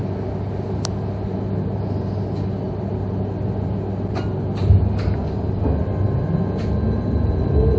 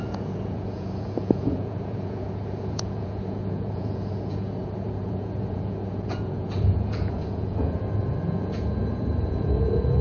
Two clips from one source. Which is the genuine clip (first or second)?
first